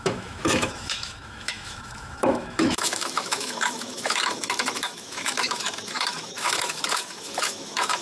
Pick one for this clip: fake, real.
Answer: fake